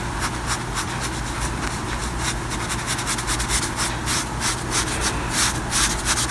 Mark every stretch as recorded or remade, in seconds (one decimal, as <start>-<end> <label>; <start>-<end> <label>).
0.0-6.3 recorded